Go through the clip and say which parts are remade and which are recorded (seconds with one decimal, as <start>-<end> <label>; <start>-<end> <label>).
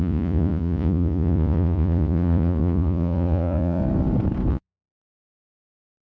0.0-3.8 remade; 3.8-4.5 recorded; 4.5-6.0 remade